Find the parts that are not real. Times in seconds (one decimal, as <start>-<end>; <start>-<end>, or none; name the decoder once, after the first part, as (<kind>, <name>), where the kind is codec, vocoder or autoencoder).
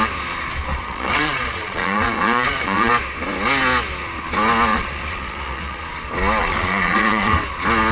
0.7-2.9 (vocoder, Vocos); 4.7-5.8; 6.4-7.4